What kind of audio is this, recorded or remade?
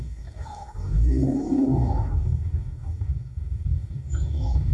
remade